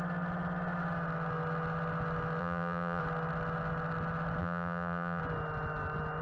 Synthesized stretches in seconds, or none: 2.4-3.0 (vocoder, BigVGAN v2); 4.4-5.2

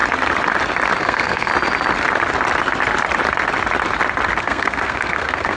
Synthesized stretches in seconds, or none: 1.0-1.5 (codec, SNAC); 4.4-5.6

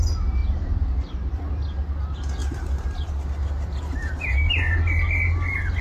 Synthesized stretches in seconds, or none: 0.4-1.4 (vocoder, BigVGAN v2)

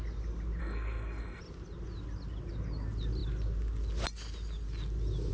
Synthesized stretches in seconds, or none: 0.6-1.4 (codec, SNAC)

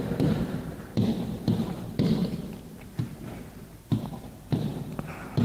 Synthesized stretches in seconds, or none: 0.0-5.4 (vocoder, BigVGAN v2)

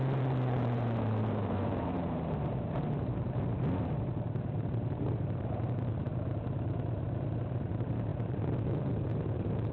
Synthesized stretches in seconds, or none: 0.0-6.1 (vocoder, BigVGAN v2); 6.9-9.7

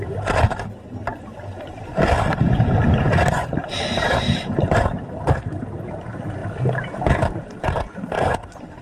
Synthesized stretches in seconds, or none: 0.0-8.8 (vocoder, BigVGAN v2)

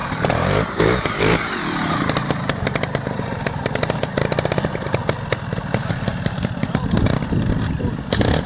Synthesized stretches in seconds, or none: 0.0-5.0 (vocoder, BigVGAN v2)